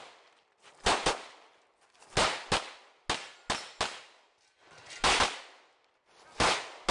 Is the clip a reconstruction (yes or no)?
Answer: no